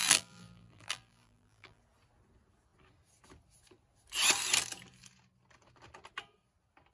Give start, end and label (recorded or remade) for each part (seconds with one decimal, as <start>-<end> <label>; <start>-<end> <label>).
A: 0.0-1.8 remade; 1.8-6.9 recorded